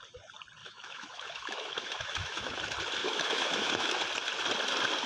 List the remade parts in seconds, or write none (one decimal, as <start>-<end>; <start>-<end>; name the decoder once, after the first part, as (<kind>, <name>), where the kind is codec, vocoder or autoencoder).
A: 0.6-2.6 (autoencoder, DAC-VAE); 3.0-4.0

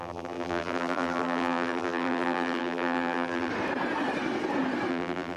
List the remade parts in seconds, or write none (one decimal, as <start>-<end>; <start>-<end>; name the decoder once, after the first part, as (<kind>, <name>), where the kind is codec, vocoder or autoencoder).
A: 0.0-3.5 (vocoder, BigVGAN v2); 4.9-5.4

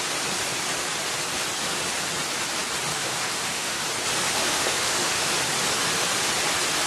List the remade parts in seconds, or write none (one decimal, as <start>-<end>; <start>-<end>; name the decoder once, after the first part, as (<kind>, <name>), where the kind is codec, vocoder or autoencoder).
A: 2.9-3.8 (autoencoder, DAC-VAE); 4.3-5.3